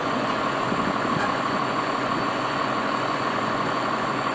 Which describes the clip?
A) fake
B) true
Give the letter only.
A